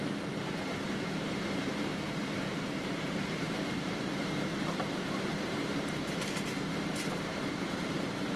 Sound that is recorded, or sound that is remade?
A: remade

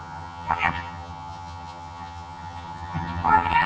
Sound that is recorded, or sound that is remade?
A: remade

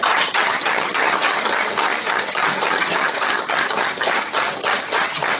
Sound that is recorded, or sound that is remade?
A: remade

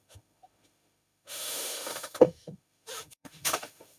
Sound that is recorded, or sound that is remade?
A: remade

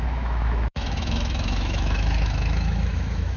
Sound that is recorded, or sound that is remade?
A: remade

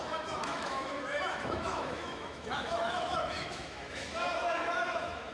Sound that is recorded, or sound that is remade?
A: remade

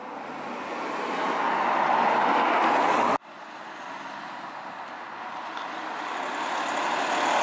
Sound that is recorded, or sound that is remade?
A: recorded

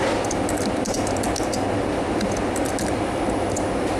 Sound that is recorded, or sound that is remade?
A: recorded